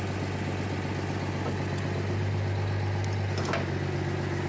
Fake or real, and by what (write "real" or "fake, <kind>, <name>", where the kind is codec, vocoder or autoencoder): real